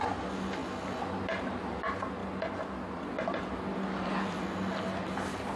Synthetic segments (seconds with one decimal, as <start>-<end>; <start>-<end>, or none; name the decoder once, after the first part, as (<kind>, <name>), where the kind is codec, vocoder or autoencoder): none

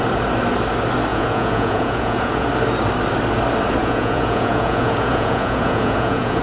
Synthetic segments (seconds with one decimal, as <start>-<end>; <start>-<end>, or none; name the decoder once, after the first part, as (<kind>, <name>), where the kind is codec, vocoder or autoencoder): 1.1-2.5 (vocoder, Vocos); 3.8-6.4